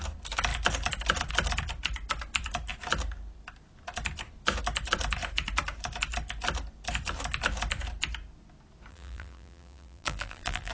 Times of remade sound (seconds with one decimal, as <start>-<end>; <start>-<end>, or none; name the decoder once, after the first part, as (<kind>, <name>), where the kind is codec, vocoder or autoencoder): 8.9-10.7 (vocoder, BigVGAN v2)